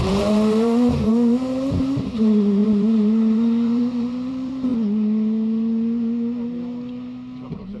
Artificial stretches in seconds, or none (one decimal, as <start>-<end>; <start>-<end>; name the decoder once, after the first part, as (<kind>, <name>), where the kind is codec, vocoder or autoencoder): 0.0-4.7 (vocoder, BigVGAN v2)